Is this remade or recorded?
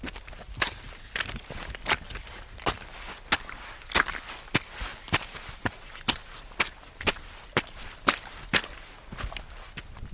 recorded